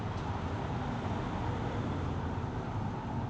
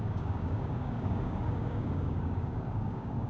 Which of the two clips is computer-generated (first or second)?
second